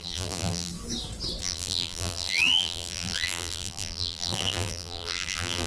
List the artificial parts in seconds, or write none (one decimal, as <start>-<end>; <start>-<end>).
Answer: 0.0-0.7; 1.4-5.7